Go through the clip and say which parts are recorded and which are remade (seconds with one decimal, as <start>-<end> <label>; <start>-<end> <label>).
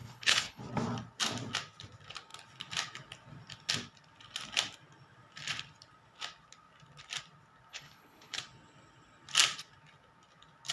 0.0-0.6 remade; 0.6-7.7 recorded; 7.7-8.4 remade; 8.4-10.7 recorded